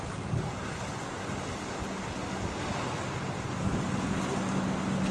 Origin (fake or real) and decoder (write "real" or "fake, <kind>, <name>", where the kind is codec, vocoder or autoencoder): real